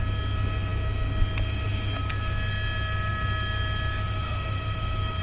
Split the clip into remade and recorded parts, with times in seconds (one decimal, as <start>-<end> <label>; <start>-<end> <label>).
0.0-4.3 recorded; 4.3-5.2 remade